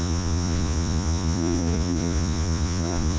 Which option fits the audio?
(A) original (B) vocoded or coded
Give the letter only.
B